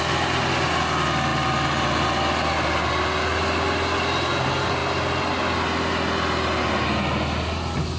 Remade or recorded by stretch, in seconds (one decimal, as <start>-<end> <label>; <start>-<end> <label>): 0.0-8.0 recorded

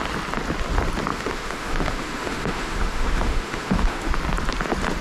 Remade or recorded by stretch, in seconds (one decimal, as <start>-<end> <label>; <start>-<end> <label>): 0.0-1.1 recorded; 1.1-4.1 remade; 4.1-5.0 recorded